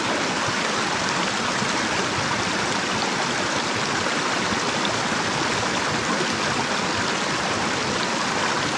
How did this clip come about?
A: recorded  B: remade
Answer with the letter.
A